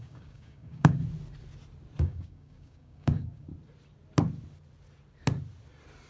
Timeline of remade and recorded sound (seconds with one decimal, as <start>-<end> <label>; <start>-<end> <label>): 0.0-1.0 remade; 1.0-2.0 recorded; 2.0-3.5 remade; 3.5-6.1 recorded